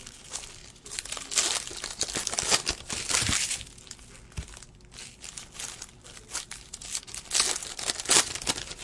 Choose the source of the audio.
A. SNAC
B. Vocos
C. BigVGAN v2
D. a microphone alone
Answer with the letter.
D